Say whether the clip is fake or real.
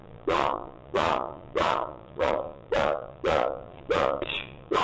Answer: fake